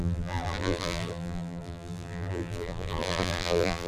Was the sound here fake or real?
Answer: fake